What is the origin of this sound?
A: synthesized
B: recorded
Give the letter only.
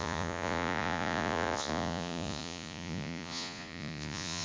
A